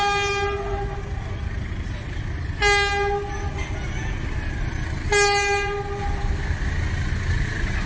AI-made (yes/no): no